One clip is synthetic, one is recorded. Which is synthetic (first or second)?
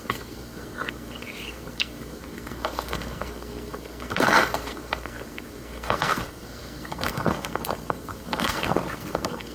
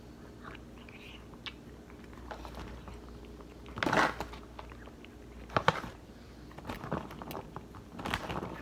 first